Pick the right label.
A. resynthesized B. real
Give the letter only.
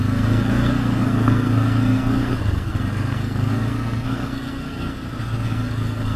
A